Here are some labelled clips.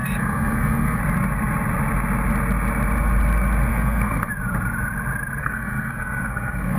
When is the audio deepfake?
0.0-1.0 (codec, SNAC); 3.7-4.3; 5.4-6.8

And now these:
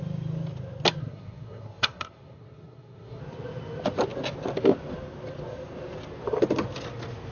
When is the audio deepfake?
1.0-3.2 (codec, SNAC)

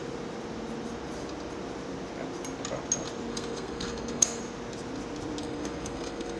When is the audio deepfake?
3.3-4.4 (codec, SNAC); 5.4-6.4

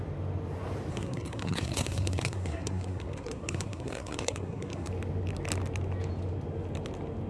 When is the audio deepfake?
0.9-4.9 (codec, SNAC)

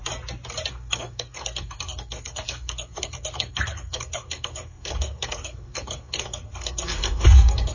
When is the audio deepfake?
0.7-7.7 (codec, SNAC)

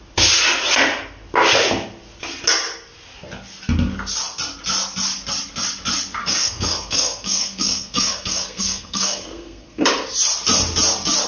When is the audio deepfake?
6.2-9.8 (codec, SNAC)

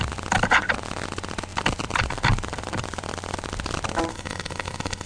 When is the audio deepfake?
4.1-5.1 (codec, SNAC)